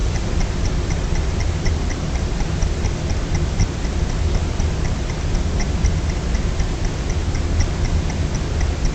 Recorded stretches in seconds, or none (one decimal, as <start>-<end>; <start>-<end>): 2.5-8.9